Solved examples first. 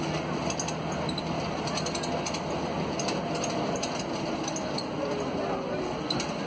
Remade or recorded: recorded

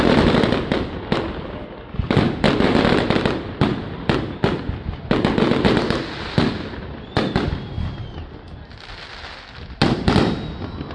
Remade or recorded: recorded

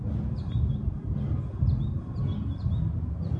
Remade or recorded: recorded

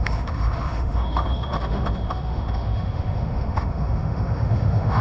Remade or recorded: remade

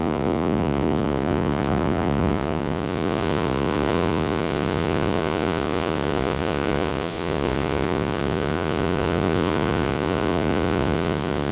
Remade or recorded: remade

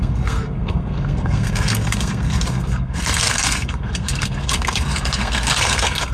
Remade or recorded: remade